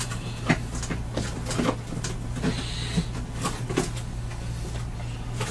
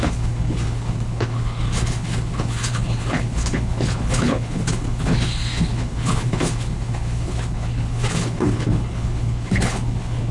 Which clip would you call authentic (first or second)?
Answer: first